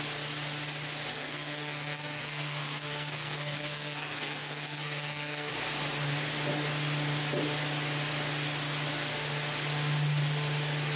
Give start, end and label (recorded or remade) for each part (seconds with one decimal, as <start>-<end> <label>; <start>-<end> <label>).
0.0-1.1 recorded; 1.1-5.5 remade; 5.5-11.0 recorded